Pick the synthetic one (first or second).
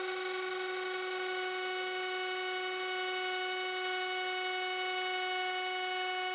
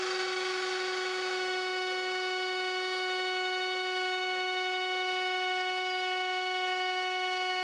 second